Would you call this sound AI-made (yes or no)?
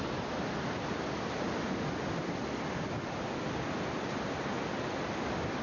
no